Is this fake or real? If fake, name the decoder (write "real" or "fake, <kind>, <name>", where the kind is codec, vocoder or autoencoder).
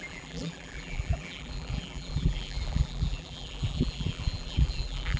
fake, vocoder, BigVGAN v2